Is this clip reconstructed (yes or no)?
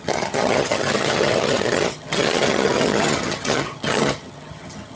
yes